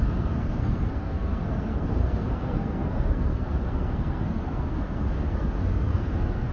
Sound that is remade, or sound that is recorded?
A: remade